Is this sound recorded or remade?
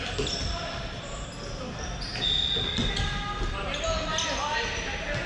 recorded